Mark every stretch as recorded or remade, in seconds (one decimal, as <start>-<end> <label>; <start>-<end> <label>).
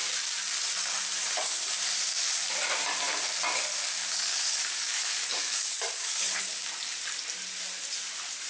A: 0.0-4.0 recorded; 4.0-6.4 remade; 6.4-8.5 recorded